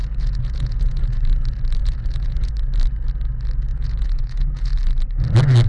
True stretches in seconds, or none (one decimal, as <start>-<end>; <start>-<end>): 1.2-1.8; 2.5-3.7; 4.8-5.7